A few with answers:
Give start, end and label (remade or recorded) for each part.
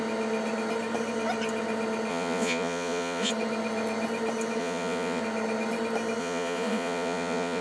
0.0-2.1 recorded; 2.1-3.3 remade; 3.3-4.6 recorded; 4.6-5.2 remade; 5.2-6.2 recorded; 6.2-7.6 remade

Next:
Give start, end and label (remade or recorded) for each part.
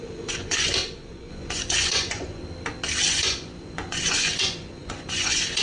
0.0-2.4 remade; 2.4-3.1 recorded; 3.1-5.6 remade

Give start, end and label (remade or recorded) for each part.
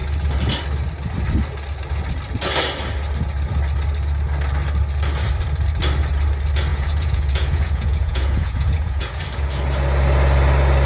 0.0-6.7 recorded; 6.7-9.2 remade; 9.2-10.8 recorded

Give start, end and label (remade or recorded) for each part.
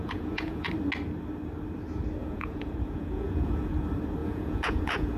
0.0-0.7 remade; 0.7-2.2 recorded; 2.2-3.7 remade; 3.7-4.2 recorded; 4.2-5.2 remade